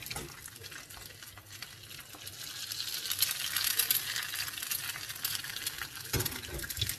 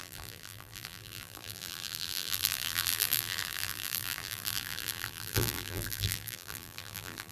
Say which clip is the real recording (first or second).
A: first